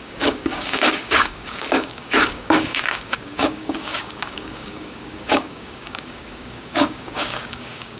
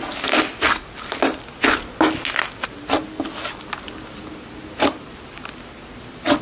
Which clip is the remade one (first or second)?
first